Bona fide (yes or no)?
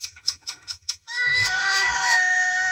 no